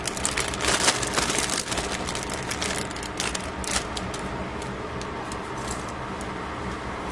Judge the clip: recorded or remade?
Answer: recorded